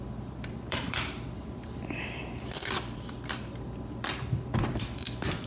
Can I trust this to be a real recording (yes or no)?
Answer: no